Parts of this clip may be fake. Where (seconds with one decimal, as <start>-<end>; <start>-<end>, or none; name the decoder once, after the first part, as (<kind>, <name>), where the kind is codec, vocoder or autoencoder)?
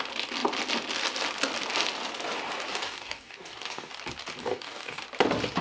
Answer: 2.7-3.9 (codec, DAC); 4.4-5.0